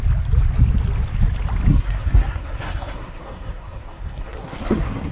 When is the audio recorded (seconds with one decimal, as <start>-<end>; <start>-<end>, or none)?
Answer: 0.0-1.7

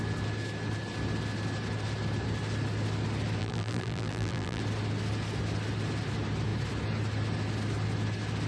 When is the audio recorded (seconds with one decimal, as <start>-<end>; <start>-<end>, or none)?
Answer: 0.0-3.4; 4.6-8.5

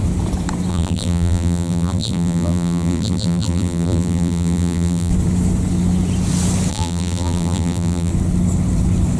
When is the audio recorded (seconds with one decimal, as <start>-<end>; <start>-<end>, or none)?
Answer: 0.0-0.7; 5.1-6.7; 8.1-9.2

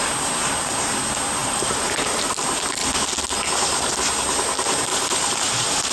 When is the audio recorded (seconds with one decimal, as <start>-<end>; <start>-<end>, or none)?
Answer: 0.0-1.4; 2.3-4.9

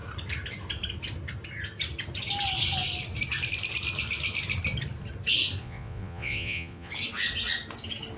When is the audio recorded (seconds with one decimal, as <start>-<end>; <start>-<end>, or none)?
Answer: 0.0-5.6; 6.9-8.2

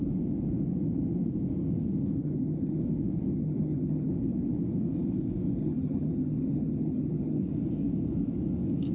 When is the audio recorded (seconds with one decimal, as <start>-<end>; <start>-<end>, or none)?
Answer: 0.0-2.2; 2.8-3.3; 4.1-5.6; 7.4-8.9